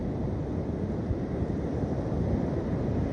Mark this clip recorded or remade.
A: recorded